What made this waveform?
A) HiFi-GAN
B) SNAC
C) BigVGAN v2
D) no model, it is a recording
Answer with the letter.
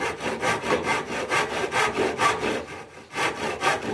C